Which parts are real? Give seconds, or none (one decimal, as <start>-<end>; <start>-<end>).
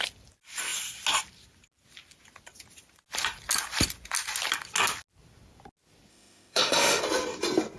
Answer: 0.0-6.1; 7.0-7.8